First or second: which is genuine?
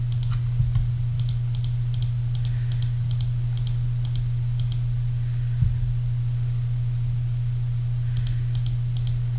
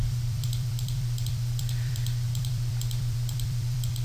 first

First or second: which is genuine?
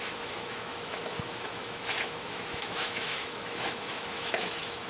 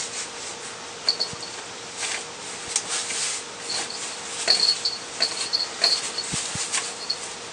second